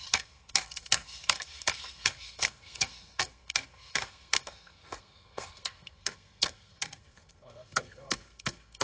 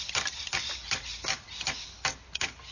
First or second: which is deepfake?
first